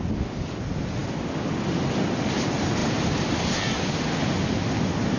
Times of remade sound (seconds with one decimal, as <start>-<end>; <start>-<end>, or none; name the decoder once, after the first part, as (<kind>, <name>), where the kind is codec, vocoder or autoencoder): none